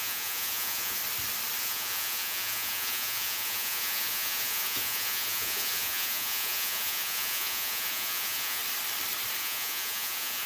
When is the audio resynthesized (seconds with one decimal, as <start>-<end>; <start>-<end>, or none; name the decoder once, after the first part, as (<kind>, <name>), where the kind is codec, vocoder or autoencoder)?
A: 0.0-1.0 (vocoder, Vocos); 1.6-8.6; 9.4-10.5